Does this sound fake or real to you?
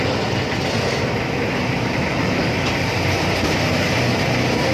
real